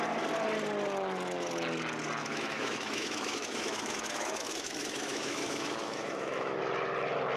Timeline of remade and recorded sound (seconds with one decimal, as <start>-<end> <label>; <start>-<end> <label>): 0.0-2.2 recorded; 2.2-6.6 remade; 6.6-7.4 recorded